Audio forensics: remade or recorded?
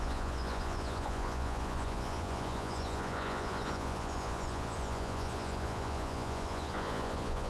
remade